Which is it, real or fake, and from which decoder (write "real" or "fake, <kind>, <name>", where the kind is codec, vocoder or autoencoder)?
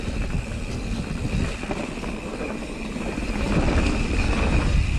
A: fake, vocoder, BigVGAN v2